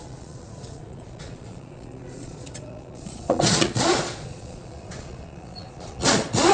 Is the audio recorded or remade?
remade